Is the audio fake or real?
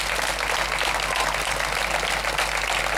real